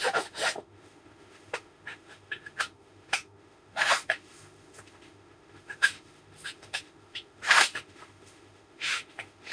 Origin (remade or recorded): remade